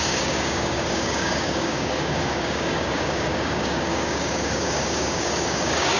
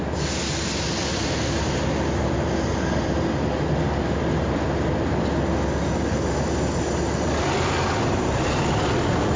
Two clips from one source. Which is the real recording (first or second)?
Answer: second